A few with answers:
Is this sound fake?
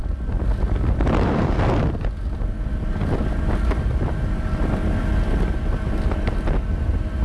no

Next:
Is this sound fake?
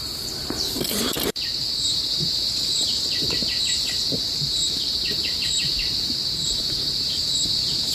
yes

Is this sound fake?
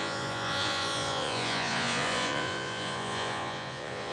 yes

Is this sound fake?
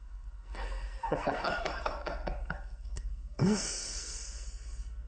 yes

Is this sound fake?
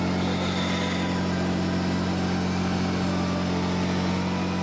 no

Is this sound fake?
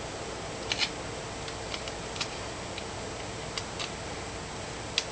no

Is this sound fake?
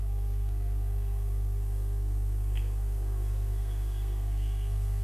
yes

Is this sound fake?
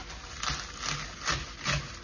no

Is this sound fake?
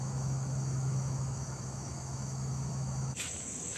yes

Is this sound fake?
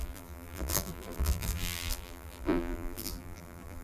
yes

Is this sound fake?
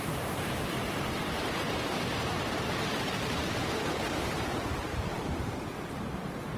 yes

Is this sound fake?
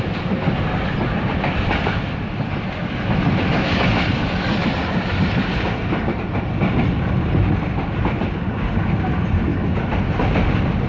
no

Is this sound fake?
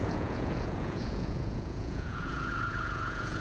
yes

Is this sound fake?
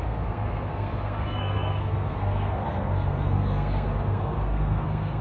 yes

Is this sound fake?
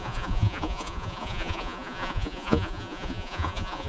yes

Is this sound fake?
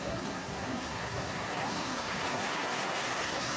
yes